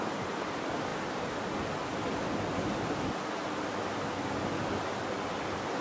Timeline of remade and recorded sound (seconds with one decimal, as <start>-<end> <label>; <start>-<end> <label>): 0.0-5.8 recorded